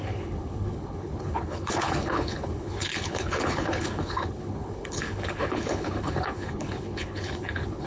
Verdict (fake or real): fake